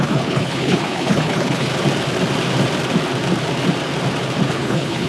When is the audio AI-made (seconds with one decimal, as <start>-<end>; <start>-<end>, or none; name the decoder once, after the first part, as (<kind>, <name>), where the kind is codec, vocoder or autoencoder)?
0.0-1.7 (codec, HILCodec); 4.5-5.1